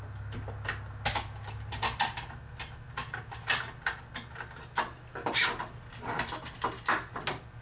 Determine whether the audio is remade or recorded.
recorded